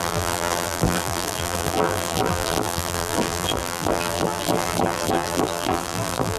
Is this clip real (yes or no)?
no